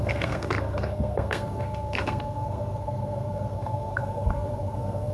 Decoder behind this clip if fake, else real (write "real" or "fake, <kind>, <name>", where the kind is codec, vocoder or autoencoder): fake, codec, SNAC